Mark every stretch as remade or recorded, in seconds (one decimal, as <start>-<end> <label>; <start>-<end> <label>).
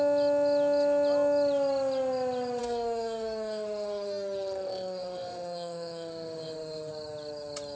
0.0-2.6 recorded; 2.6-6.9 remade; 6.9-7.8 recorded